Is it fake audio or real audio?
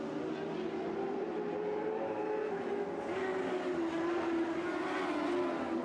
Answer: real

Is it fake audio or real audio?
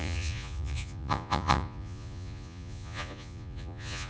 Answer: fake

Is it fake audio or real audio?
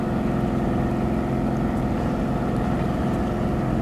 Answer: real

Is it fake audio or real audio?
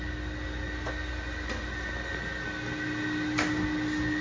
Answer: real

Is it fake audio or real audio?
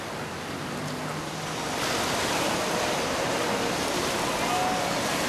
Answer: real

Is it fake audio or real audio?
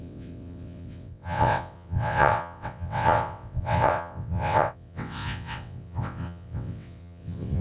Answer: fake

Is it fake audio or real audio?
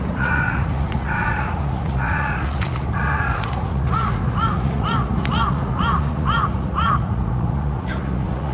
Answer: fake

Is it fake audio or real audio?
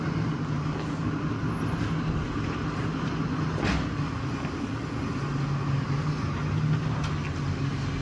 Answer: real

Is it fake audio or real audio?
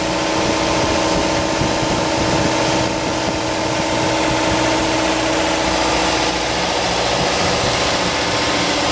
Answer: real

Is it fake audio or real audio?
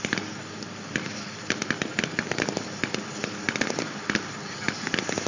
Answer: fake